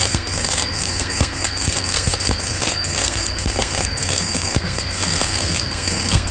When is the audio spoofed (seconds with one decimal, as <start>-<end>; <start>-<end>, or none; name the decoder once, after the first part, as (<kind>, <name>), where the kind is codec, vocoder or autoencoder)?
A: 0.0-6.3 (codec, SNAC)